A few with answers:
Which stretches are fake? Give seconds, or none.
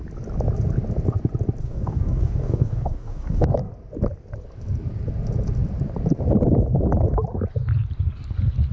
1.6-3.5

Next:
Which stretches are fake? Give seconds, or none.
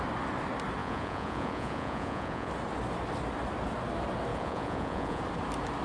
0.8-2.5; 4.3-5.2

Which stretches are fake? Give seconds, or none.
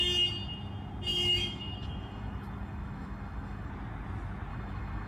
1.1-3.7; 4.5-5.1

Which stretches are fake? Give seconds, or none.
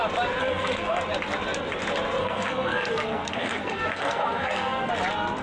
0.4-1.0; 2.2-4.9